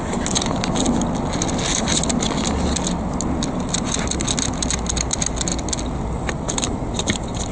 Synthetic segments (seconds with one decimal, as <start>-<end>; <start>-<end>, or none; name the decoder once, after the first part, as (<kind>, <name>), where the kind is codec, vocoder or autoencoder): none